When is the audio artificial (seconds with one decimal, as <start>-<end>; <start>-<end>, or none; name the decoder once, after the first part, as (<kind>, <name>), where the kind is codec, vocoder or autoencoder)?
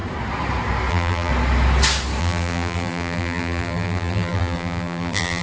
0.9-1.3 (vocoder, BigVGAN v2); 2.2-5.4